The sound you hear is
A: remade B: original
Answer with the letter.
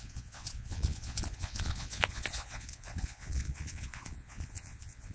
A